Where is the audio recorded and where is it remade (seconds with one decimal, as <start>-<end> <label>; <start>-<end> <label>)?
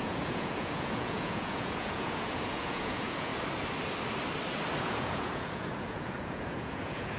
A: 0.0-3.3 remade; 3.3-4.8 recorded; 4.8-7.2 remade